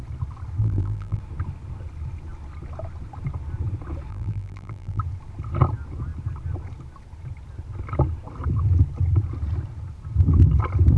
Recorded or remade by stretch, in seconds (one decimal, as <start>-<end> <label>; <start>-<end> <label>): 0.0-0.6 recorded; 0.6-1.2 remade; 1.2-4.1 recorded; 4.1-5.0 remade; 5.0-11.0 recorded